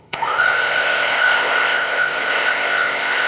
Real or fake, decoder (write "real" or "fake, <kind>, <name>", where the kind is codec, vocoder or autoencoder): fake, codec, ZipCodec